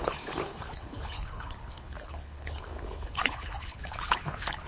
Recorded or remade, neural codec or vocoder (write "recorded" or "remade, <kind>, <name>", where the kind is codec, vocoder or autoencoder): remade, codec, HILCodec